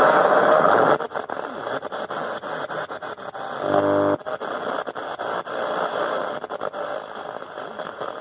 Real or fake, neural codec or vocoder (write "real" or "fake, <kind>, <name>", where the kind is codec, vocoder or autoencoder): real